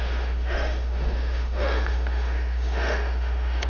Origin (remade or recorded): remade